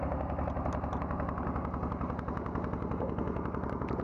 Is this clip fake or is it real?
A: real